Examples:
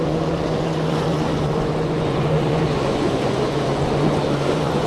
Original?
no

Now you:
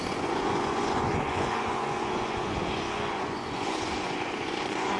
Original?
no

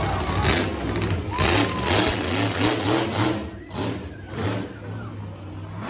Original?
yes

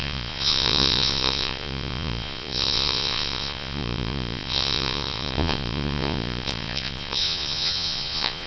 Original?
no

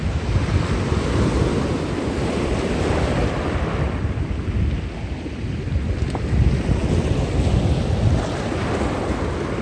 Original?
yes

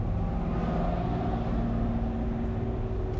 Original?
yes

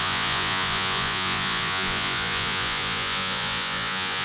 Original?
no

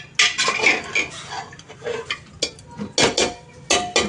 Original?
yes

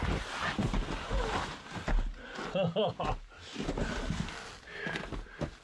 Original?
yes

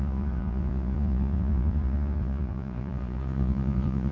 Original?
no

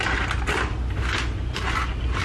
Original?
yes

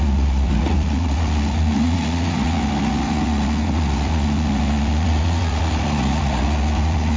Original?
no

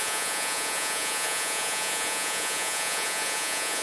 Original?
no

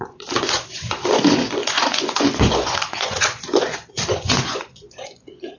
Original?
no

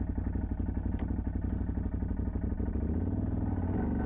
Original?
yes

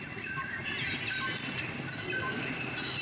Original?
yes